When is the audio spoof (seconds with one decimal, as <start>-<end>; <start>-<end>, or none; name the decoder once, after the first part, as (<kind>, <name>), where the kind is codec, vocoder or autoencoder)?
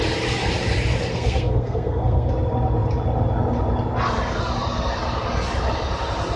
1.1-2.3 (codec, SNAC)